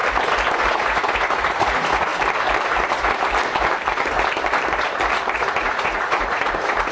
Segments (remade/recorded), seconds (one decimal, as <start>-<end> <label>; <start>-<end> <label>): 0.0-0.7 recorded; 0.7-2.1 remade; 2.1-5.5 recorded; 5.5-6.9 remade